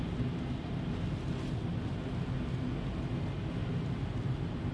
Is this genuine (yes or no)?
yes